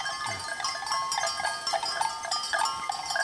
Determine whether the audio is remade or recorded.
recorded